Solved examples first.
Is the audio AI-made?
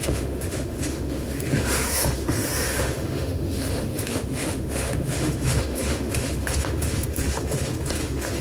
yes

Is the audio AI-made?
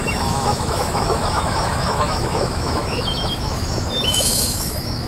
yes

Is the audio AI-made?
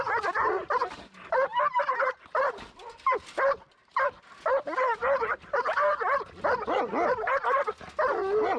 no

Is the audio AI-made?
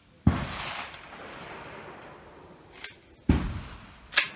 no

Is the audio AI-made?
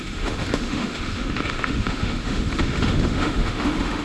yes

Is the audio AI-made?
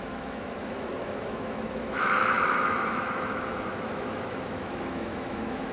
yes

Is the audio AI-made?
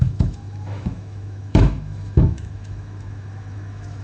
yes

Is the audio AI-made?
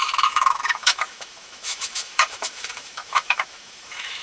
yes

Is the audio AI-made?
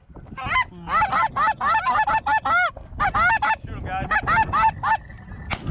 no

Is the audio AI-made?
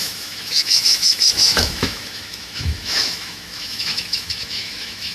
yes